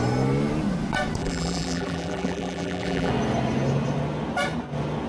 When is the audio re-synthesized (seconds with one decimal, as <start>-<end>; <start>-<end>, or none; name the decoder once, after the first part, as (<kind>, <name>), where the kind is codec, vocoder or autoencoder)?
1.2-3.1 (vocoder, BigVGAN v2)